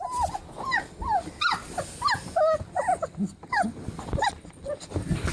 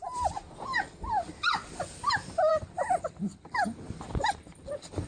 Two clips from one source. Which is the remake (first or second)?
second